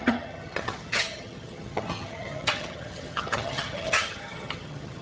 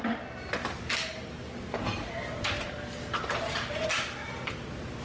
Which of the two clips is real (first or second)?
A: second